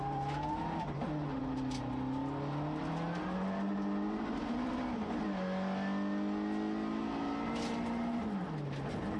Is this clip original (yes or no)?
yes